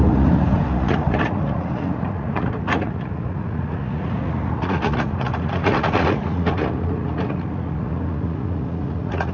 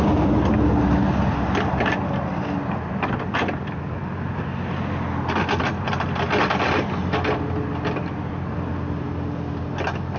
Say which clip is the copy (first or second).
first